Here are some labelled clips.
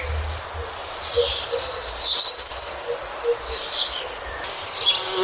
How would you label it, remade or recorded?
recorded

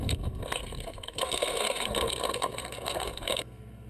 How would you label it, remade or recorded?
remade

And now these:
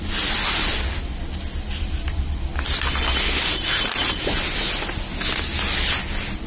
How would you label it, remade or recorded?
recorded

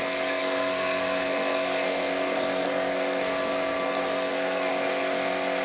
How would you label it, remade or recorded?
remade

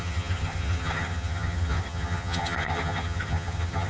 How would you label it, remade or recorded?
remade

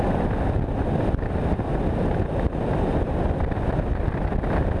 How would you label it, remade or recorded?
recorded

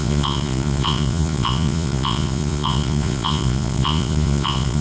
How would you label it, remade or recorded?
remade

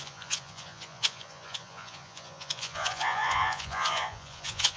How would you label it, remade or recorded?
remade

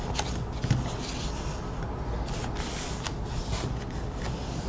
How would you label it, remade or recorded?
recorded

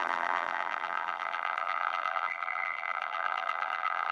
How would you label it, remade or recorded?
remade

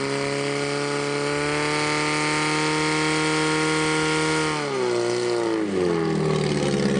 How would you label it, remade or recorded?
recorded